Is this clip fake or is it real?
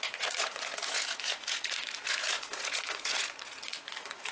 fake